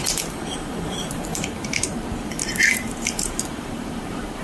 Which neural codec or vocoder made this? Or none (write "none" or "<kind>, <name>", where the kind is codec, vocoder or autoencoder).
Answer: vocoder, BigVGAN v2